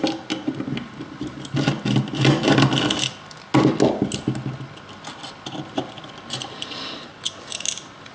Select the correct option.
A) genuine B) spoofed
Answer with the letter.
A